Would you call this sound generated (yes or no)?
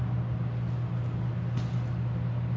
no